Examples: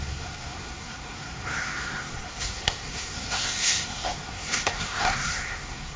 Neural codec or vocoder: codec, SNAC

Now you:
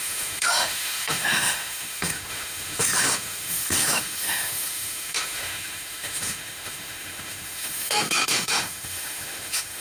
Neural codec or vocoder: autoencoder, DAC-VAE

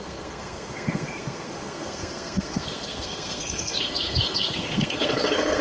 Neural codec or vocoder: codec, SNAC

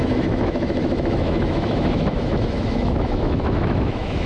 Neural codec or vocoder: autoencoder, DAC-VAE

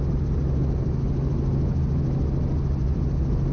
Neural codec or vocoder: none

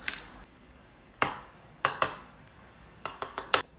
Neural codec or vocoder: codec, DAC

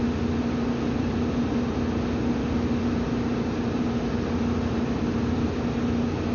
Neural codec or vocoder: none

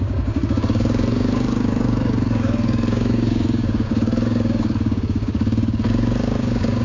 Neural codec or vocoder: codec, DAC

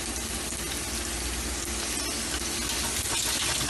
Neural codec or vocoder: none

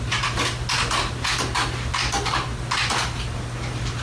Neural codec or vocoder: none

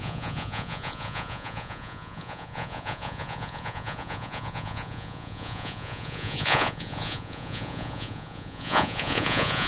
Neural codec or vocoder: vocoder, Vocos